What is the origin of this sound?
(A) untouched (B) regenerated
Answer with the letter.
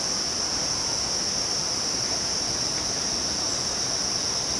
A